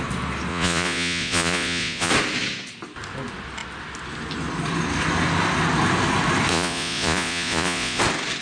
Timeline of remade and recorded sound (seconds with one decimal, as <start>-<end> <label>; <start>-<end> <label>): 0.0-0.5 recorded; 0.5-2.1 remade; 2.1-6.5 recorded; 6.5-8.0 remade; 8.0-8.4 recorded